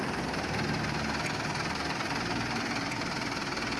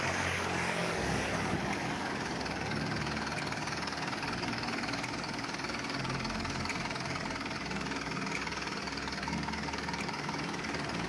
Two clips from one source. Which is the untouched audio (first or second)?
first